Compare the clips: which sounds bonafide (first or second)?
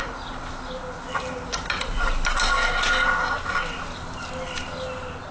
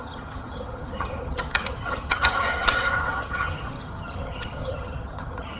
first